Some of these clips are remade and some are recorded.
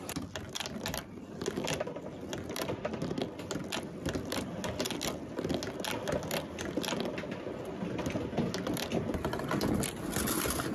recorded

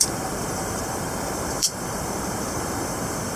remade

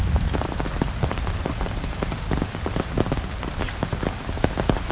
recorded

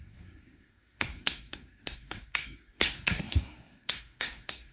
remade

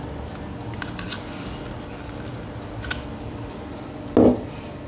recorded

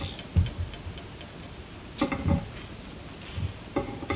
recorded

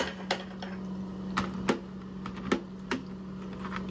recorded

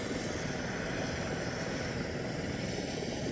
recorded